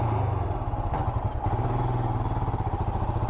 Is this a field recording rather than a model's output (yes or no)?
yes